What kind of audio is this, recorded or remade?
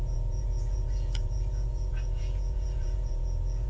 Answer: remade